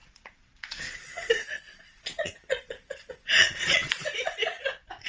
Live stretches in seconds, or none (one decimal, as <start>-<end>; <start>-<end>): none

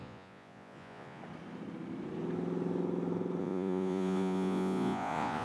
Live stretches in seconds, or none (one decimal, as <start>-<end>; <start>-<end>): 1.2-3.4

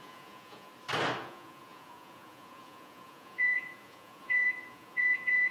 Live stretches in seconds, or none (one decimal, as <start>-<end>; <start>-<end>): 0.7-1.2